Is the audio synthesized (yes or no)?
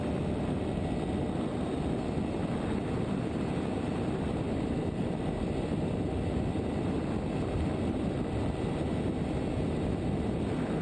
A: no